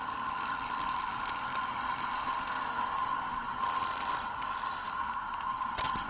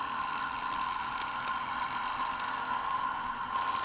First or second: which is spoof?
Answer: first